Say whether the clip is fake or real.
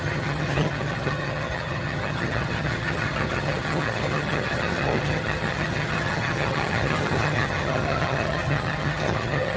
fake